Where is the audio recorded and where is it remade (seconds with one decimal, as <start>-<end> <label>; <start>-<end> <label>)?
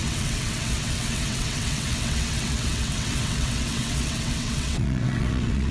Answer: 0.0-5.7 remade